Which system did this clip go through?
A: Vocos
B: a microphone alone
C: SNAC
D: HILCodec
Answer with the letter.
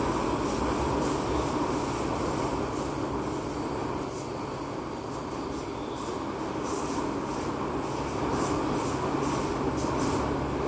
B